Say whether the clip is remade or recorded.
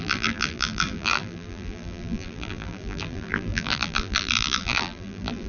remade